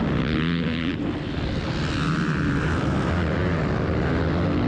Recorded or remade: recorded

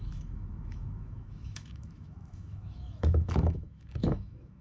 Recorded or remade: remade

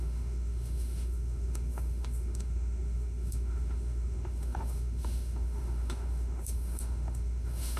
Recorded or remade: remade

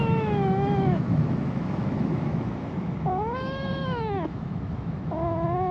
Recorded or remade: remade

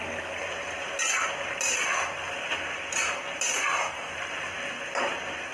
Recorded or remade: recorded